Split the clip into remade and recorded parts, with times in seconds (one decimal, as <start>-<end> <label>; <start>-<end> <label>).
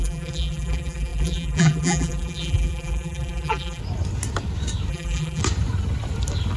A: 0.0-3.8 remade; 3.8-4.9 recorded; 4.9-5.4 remade; 5.4-6.6 recorded